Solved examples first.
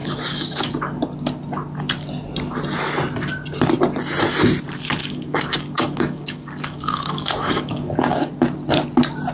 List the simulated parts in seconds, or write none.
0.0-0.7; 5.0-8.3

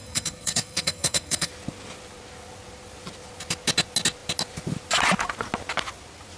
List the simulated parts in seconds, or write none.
0.0-1.5

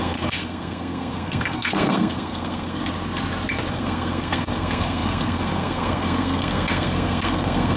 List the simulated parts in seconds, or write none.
0.0-2.8; 3.7-7.8

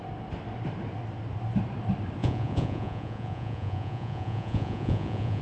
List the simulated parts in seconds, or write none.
2.2-5.4

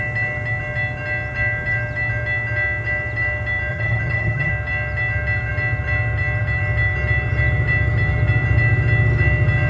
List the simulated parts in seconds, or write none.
3.7-4.5

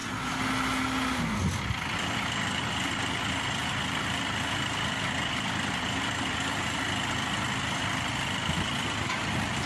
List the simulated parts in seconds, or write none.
none

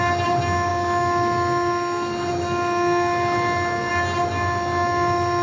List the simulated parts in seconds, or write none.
none

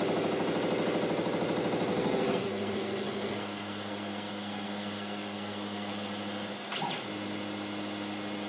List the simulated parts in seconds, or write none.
1.9-6.0